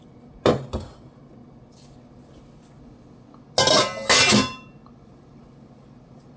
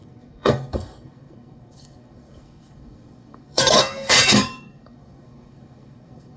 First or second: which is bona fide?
first